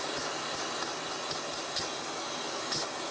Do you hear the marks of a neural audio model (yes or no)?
no